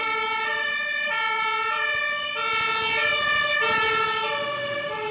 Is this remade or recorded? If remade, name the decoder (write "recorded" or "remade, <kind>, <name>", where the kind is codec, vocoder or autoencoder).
recorded